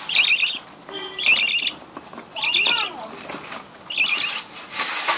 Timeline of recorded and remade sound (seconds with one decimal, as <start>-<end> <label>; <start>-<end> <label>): 0.0-5.2 recorded